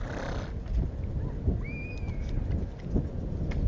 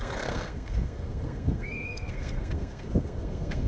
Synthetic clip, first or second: second